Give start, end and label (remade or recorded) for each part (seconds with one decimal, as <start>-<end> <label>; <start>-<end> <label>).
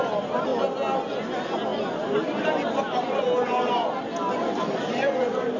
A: 0.0-5.6 recorded